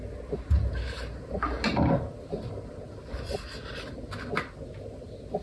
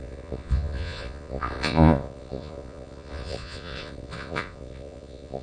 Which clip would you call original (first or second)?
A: first